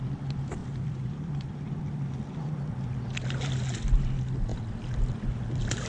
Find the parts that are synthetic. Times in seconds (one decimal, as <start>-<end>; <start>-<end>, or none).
0.6-1.8; 4.5-5.9